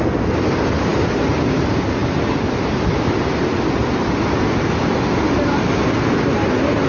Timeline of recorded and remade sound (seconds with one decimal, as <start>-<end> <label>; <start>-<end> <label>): 0.0-6.9 recorded